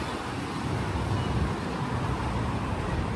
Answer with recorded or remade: recorded